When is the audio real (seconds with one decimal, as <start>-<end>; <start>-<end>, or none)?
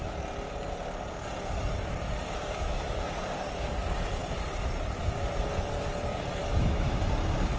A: 0.0-2.2; 3.1-6.4; 7.0-7.6